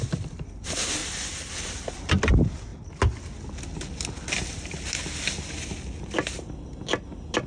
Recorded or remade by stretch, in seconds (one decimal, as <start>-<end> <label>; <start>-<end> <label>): 0.0-1.0 remade; 1.0-1.5 recorded; 1.5-2.7 remade; 2.7-7.5 recorded